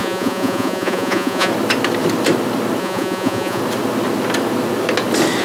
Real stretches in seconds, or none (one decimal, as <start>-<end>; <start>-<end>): 1.5-2.8; 3.6-5.4